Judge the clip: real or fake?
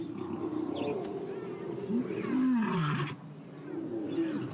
real